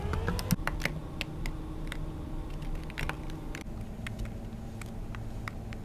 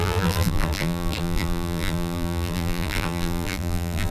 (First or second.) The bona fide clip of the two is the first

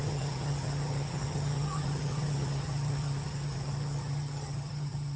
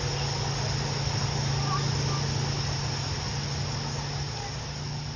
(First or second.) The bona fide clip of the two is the second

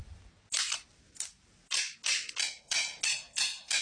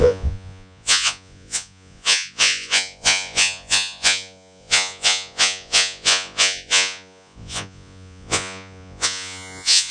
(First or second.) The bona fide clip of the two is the first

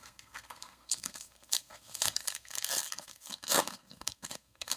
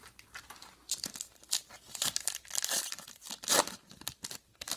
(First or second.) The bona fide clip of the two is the second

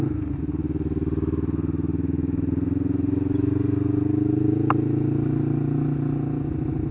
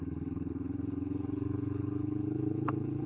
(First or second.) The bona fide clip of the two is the first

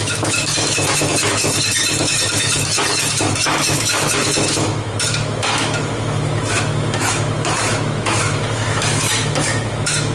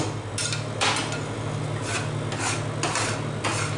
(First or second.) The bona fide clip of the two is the second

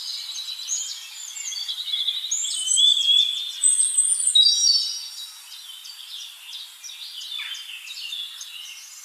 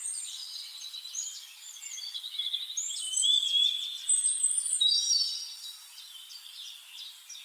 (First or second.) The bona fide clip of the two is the first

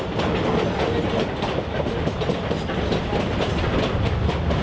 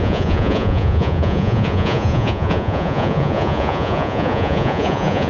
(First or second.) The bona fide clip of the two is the first